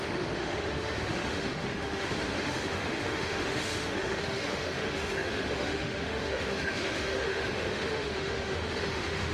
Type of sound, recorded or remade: remade